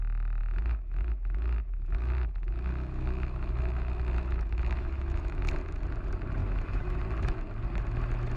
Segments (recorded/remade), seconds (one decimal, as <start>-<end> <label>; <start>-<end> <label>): 0.0-0.4 recorded; 0.4-5.4 remade; 5.4-6.4 recorded; 6.4-7.0 remade; 7.0-8.4 recorded